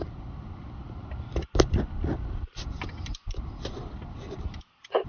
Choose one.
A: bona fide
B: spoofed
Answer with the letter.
B